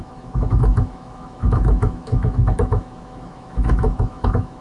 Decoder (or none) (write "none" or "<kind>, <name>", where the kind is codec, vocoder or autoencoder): autoencoder, DAC-VAE